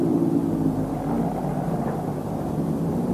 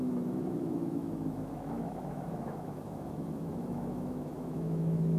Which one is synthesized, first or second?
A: second